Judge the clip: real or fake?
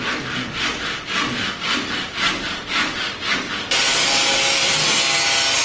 real